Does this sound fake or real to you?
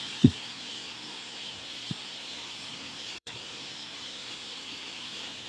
fake